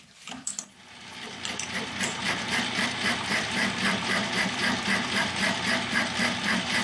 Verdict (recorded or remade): remade